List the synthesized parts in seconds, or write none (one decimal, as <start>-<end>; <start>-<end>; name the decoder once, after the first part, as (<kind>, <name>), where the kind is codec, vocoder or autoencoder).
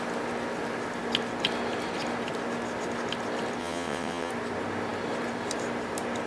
3.6-4.3 (vocoder, WaveNeXt)